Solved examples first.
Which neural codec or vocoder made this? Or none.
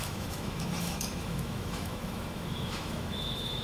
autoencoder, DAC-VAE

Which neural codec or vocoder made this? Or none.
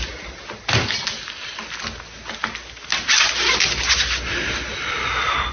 none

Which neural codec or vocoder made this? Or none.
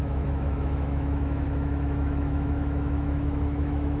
autoencoder, DAC-VAE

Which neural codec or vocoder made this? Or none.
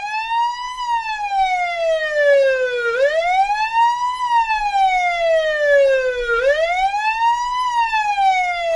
none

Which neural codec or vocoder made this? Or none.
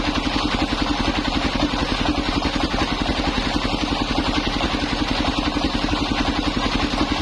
none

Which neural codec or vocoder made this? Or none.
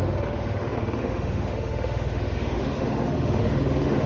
autoencoder, DAC-VAE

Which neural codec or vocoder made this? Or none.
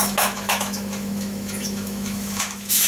autoencoder, DAC-VAE